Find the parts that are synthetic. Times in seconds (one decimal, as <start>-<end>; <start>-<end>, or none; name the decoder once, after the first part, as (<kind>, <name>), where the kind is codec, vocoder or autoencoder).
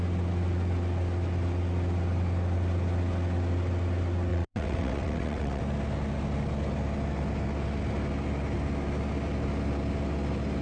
4.3-5.6 (vocoder, WaveNeXt)